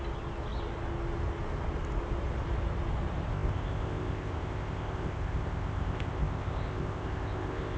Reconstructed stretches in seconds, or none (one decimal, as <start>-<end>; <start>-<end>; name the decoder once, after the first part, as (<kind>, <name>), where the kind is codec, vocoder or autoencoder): 3.3-7.8 (codec, ZipCodec)